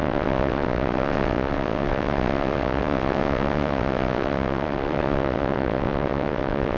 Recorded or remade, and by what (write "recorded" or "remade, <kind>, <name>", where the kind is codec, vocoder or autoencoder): remade, vocoder, WaveNeXt